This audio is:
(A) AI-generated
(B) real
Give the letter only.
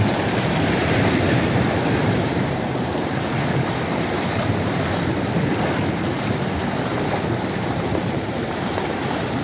A